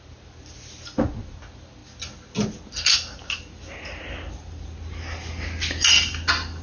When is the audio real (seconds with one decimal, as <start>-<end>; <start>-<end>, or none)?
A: 0.0-6.6